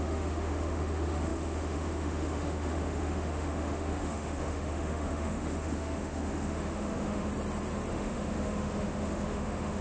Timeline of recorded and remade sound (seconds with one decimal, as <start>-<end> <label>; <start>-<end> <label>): 0.0-7.3 remade; 7.3-7.9 recorded; 7.9-9.8 remade